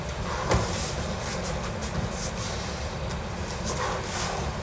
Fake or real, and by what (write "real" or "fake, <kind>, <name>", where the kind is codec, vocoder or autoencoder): real